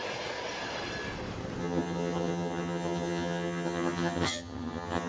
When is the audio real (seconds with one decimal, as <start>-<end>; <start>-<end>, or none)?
0.0-1.6